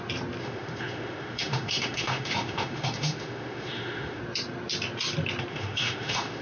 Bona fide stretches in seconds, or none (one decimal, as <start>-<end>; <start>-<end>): 0.0-0.4; 4.2-5.5